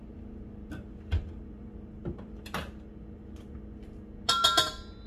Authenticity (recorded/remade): recorded